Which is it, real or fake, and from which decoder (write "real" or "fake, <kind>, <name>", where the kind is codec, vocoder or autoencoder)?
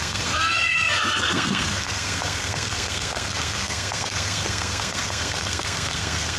fake, codec, SNAC